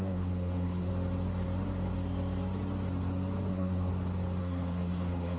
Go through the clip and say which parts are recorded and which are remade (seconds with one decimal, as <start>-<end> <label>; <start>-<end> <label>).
0.0-0.9 remade; 0.9-3.5 recorded; 3.5-3.9 remade; 3.9-4.4 recorded; 4.4-5.4 remade